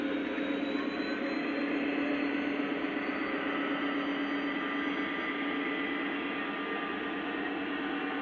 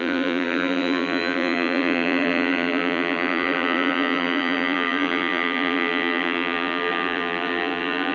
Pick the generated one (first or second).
second